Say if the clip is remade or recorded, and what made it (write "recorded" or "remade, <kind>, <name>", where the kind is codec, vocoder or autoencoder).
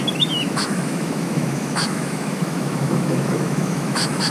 remade, autoencoder, DAC-VAE